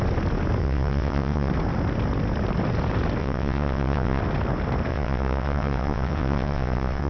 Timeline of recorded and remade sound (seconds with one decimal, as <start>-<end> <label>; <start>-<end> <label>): 0.0-0.6 recorded; 0.6-1.5 remade; 1.5-3.2 recorded; 3.2-4.2 remade; 4.2-4.9 recorded; 4.9-7.1 remade